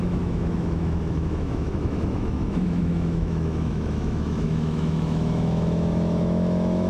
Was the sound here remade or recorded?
remade